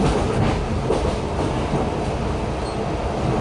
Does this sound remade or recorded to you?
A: recorded